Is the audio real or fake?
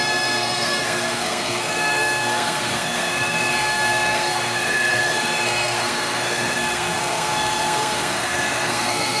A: fake